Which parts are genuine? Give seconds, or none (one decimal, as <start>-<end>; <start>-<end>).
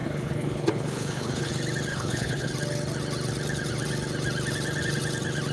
1.5-1.9; 2.5-5.5